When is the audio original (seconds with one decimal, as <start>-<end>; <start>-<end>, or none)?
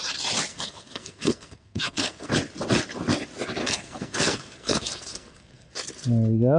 0.0-0.5; 2.3-3.6; 5.7-6.6